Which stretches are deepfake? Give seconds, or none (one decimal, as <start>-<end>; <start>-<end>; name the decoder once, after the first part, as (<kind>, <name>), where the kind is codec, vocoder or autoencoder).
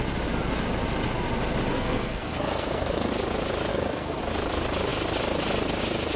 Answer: 1.7-3.1 (codec, SNAC); 3.7-4.2